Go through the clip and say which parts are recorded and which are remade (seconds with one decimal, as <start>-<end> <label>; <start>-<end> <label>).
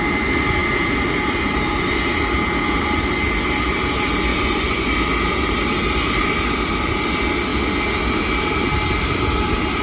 0.0-4.3 recorded; 4.3-4.9 remade; 4.9-9.8 recorded